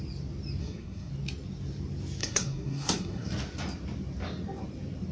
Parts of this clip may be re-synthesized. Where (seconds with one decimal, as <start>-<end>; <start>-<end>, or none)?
0.6-1.1; 2.2-3.3